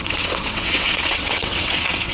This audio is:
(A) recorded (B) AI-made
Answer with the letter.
B